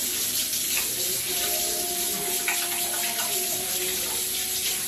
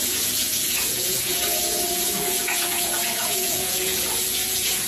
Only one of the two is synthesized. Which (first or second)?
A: second